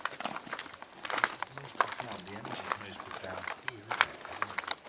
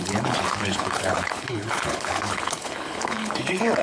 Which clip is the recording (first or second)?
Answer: first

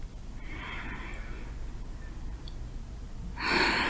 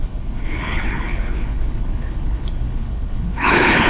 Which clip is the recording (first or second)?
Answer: first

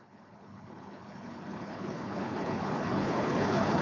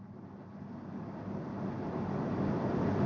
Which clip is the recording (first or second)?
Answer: second